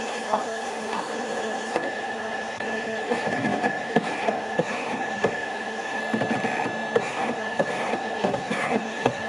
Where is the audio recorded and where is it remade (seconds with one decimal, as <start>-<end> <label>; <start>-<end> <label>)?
0.0-6.0 remade; 6.0-7.0 recorded; 7.0-9.3 remade